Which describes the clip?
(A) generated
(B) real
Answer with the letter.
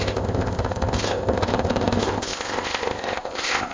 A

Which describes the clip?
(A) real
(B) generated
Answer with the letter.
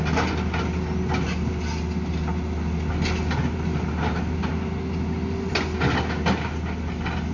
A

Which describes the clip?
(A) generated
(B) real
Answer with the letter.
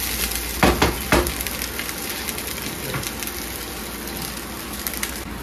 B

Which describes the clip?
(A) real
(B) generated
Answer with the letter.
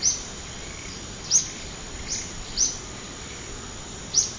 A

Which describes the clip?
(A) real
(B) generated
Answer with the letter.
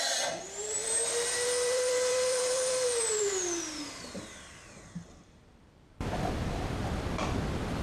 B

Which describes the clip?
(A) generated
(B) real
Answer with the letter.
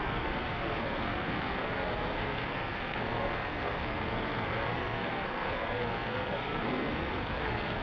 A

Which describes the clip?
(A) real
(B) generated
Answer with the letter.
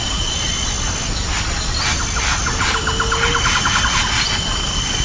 A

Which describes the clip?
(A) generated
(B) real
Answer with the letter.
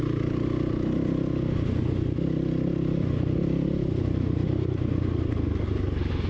B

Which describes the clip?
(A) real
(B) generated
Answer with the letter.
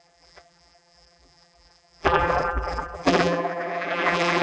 B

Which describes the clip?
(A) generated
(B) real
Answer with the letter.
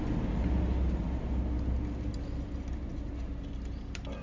B